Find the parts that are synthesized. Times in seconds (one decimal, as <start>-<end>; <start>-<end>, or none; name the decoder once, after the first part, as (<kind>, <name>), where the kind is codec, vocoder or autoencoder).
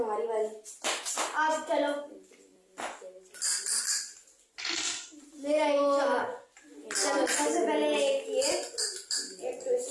none